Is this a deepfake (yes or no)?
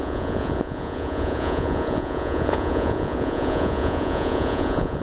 yes